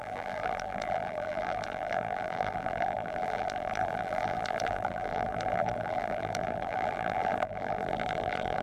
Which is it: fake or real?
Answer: fake